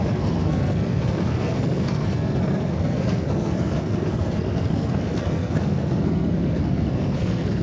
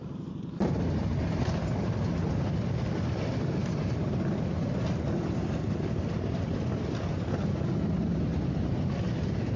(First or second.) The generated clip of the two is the first